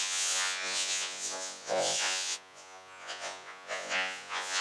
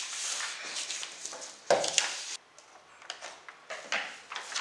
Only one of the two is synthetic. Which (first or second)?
first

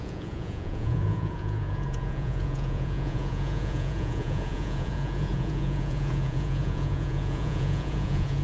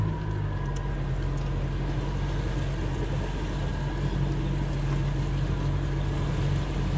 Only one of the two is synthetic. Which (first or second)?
first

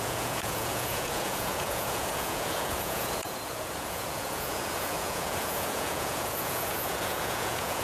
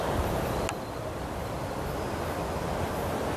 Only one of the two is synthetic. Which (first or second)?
first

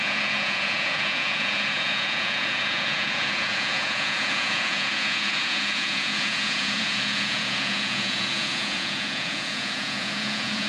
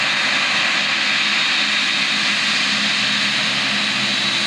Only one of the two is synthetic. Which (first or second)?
first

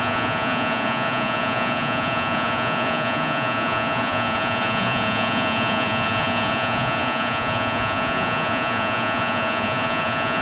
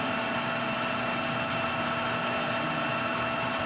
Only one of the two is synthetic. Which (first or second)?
first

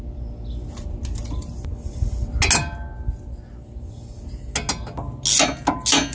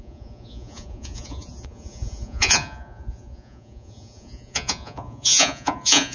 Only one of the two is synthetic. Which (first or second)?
second